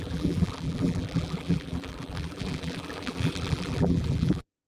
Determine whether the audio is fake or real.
fake